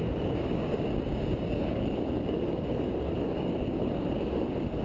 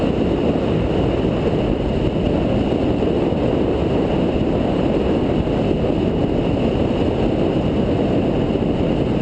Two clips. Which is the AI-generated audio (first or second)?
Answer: first